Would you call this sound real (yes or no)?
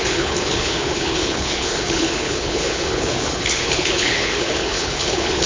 no